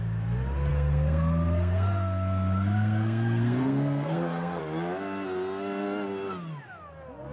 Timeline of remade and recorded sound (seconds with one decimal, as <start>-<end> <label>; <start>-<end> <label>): 0.0-0.7 recorded; 0.7-4.6 remade; 4.6-7.3 recorded